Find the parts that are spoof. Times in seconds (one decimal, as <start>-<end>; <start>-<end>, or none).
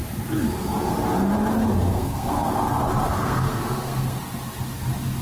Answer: 1.9-2.6; 3.1-4.2